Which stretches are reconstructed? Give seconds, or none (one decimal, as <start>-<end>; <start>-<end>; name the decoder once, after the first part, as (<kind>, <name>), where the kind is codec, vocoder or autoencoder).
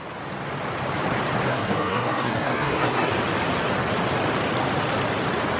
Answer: 1.5-3.1 (codec, SNAC)